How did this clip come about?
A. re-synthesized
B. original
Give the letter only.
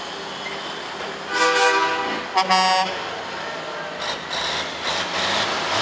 B